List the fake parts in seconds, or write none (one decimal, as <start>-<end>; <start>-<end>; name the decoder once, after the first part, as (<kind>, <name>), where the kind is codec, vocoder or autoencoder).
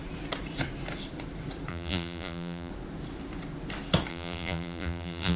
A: 1.7-2.7 (vocoder, BigVGAN v2); 4.1-5.4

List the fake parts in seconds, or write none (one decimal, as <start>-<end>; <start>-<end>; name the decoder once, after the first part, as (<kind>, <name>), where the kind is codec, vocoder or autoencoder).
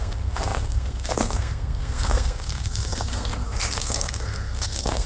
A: 0.0-5.1 (codec, SNAC)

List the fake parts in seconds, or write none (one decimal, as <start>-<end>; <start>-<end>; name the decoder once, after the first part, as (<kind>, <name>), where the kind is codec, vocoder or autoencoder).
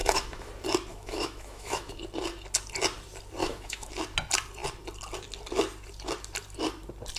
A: 0.0-0.5 (autoencoder, DAC-VAE); 0.9-2.0; 3.4-3.9